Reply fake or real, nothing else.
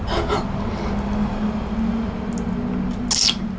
real